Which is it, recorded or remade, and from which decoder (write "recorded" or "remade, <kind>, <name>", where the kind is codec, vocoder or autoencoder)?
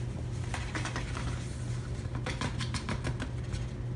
recorded